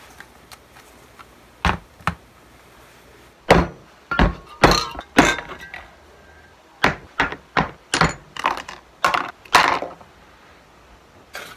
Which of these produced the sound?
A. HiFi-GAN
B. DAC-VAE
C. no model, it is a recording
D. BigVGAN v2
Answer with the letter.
C